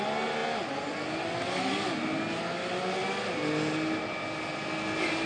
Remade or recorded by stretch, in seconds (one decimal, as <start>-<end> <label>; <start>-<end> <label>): 0.0-5.3 recorded